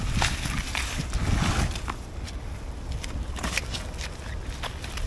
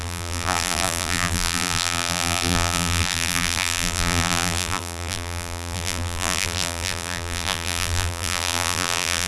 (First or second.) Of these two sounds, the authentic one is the first